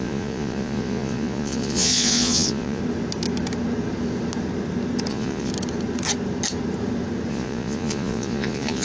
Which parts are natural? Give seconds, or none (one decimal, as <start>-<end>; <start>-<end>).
2.8-5.1; 5.5-7.3